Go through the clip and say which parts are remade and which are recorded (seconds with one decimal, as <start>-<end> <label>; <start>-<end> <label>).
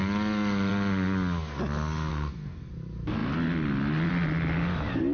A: 0.0-2.1 recorded; 2.1-2.7 remade; 2.7-5.1 recorded